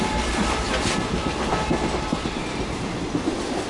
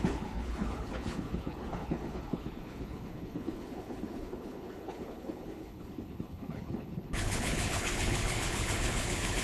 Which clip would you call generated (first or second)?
second